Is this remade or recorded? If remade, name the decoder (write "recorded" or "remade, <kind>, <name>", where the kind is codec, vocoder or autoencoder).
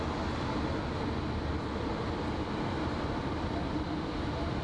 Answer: recorded